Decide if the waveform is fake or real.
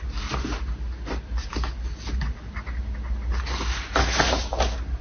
real